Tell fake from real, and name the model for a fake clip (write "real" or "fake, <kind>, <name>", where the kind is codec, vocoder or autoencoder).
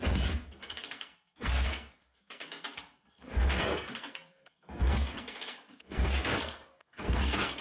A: fake, codec, SNAC